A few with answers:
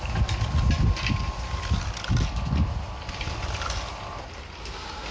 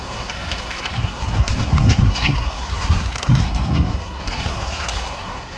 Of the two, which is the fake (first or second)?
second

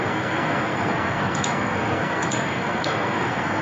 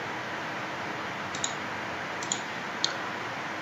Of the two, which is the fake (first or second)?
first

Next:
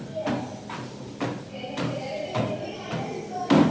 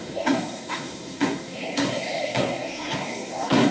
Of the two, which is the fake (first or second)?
second